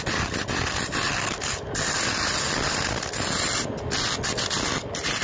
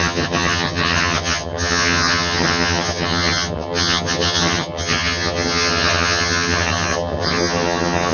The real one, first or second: first